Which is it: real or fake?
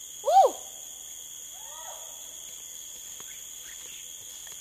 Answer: real